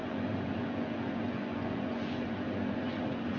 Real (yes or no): no